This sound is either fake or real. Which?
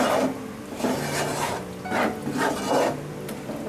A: real